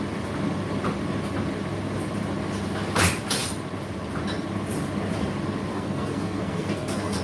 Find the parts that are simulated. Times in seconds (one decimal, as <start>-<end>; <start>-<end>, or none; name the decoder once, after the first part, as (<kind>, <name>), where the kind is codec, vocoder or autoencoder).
5.7-7.2 (codec, SNAC)